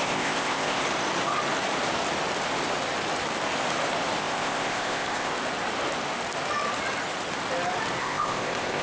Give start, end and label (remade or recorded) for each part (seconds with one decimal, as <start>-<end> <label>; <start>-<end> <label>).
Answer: 0.0-0.8 remade; 0.8-4.2 recorded; 4.2-5.3 remade; 5.3-8.0 recorded; 8.0-8.8 remade